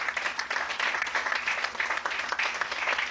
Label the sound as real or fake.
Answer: real